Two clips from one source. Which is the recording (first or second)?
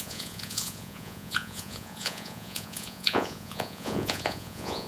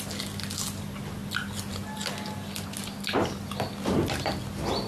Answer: second